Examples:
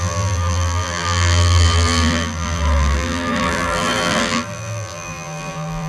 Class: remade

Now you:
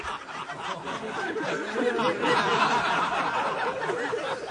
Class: recorded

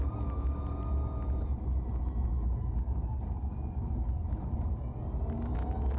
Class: recorded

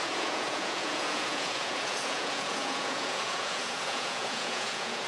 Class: remade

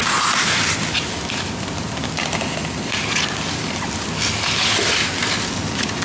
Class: recorded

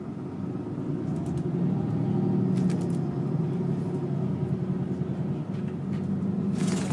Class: recorded